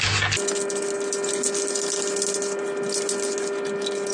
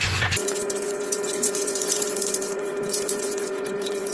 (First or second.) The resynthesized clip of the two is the second